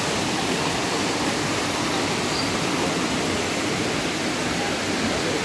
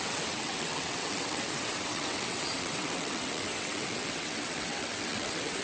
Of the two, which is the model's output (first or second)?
second